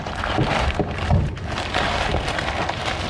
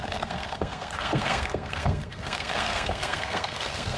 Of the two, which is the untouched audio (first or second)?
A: first